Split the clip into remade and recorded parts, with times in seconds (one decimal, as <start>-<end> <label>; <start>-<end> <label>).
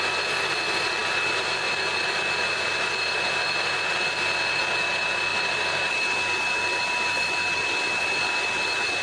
0.0-9.0 recorded